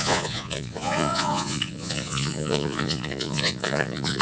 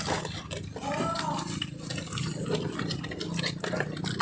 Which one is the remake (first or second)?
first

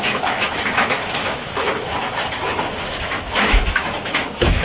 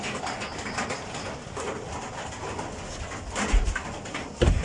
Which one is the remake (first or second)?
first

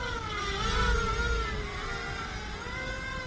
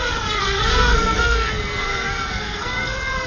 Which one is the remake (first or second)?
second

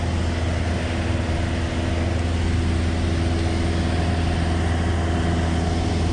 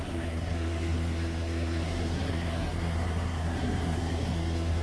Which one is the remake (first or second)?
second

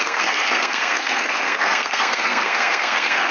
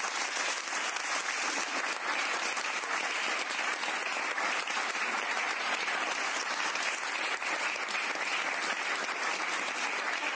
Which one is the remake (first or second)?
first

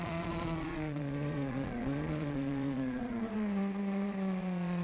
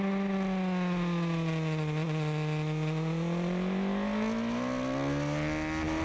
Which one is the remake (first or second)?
first